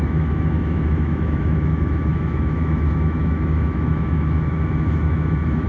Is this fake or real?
fake